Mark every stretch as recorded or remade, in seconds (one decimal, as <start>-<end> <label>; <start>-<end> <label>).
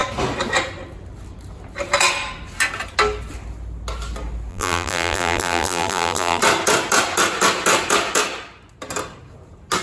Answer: 0.0-4.5 recorded; 4.5-6.4 remade; 6.4-9.8 recorded